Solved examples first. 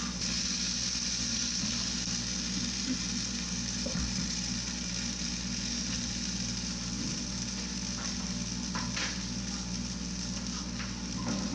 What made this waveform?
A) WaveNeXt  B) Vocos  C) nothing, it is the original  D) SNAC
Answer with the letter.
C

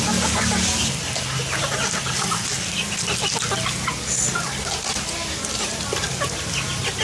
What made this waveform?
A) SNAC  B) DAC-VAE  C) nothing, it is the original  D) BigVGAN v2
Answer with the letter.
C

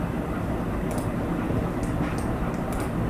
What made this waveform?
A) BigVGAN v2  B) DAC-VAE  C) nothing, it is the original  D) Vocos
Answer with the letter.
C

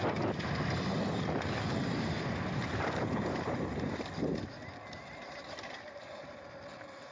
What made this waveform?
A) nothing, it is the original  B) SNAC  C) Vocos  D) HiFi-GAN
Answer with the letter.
A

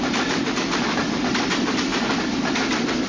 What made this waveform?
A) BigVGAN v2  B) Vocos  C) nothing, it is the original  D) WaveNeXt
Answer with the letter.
C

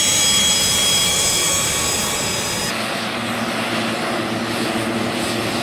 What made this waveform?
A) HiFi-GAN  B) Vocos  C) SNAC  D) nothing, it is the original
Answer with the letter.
D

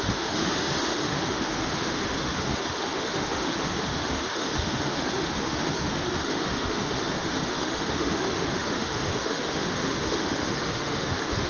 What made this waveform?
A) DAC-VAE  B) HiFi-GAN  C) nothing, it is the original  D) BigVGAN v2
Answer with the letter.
A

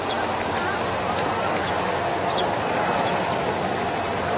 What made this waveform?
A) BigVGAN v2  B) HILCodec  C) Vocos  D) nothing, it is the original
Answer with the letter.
D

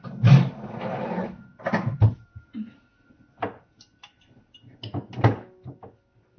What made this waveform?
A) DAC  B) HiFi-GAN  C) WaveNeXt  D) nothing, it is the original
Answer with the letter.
D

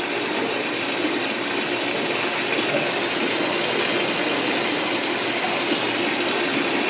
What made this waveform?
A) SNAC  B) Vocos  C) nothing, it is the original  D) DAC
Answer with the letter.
C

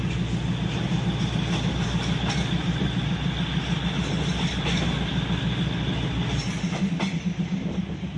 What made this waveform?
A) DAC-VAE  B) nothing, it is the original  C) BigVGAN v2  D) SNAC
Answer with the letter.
B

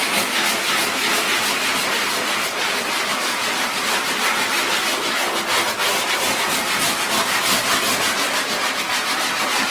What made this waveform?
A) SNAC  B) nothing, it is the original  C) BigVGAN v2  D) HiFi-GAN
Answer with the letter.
C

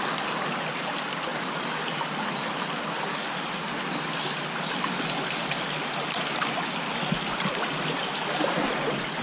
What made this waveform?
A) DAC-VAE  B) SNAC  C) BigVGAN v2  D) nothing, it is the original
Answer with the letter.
D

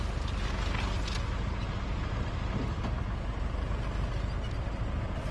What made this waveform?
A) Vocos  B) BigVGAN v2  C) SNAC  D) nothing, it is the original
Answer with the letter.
D